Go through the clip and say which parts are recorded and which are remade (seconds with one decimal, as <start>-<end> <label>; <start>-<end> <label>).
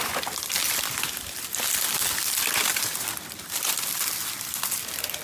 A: 0.0-5.2 recorded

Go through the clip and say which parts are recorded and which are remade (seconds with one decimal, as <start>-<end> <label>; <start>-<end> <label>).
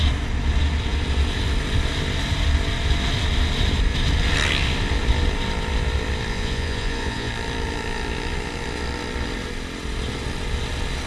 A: 0.0-6.3 recorded; 6.3-7.3 remade; 7.3-11.1 recorded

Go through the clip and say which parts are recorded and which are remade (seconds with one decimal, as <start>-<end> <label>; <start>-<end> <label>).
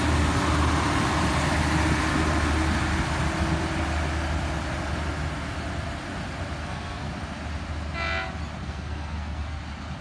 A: 0.0-6.6 recorded; 6.6-7.1 remade; 7.1-8.6 recorded; 8.6-9.6 remade; 9.6-10.0 recorded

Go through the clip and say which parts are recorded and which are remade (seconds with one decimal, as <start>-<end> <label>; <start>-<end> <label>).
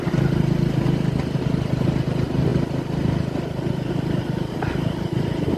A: 0.0-5.6 recorded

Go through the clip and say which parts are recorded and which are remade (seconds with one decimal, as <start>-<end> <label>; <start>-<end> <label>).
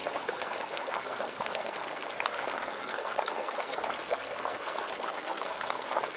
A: 0.0-6.2 remade